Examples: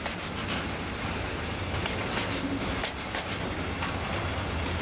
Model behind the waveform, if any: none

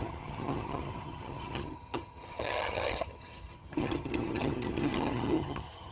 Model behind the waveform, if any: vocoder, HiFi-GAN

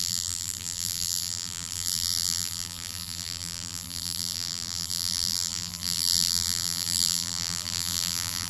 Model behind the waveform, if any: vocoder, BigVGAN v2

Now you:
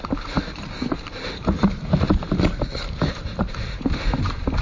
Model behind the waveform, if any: vocoder, BigVGAN v2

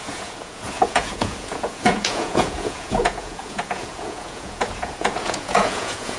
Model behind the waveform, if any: vocoder, Vocos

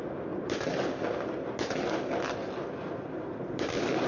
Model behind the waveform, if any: none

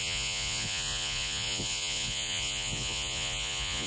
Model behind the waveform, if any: vocoder, Vocos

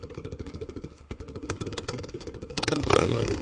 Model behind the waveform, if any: codec, SNAC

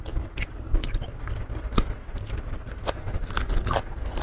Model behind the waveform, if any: none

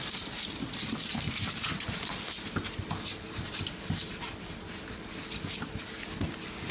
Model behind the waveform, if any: none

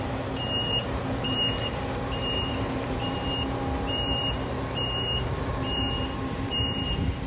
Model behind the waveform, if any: vocoder, BigVGAN v2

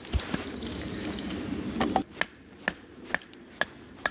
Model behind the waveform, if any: none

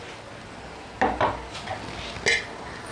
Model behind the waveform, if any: none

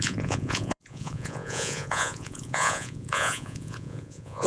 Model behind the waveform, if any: vocoder, Vocos